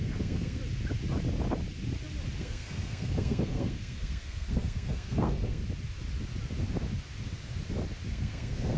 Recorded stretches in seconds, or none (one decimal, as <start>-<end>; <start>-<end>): 0.6-2.4; 5.6-8.1